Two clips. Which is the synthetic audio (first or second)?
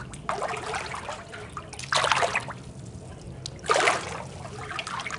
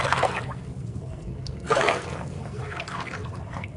second